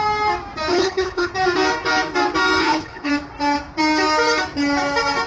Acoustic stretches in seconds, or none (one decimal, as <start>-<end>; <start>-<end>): 0.0-0.7; 1.3-2.6; 3.1-5.3